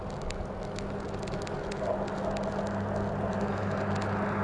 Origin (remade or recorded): recorded